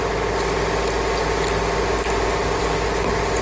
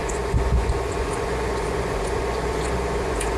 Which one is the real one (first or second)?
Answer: first